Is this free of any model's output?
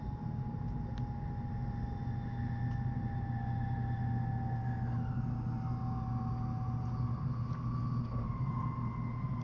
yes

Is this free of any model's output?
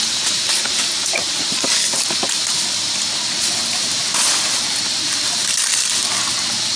yes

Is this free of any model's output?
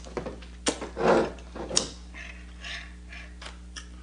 yes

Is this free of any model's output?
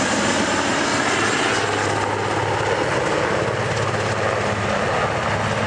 yes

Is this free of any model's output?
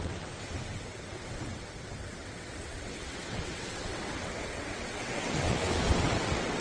no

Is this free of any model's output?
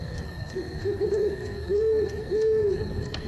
no